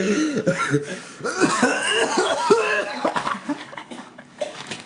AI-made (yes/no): yes